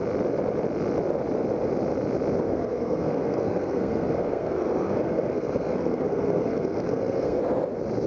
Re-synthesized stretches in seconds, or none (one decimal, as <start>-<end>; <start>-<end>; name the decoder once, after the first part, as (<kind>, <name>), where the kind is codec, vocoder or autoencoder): 2.5-7.4 (codec, SNAC)